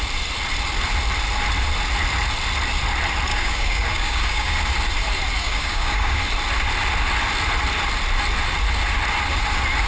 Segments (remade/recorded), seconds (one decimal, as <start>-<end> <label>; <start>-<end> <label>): 0.0-3.3 recorded; 3.3-4.6 remade; 4.6-5.4 recorded; 5.4-6.2 remade; 6.2-9.9 recorded